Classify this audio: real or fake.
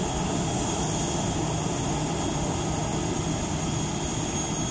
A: real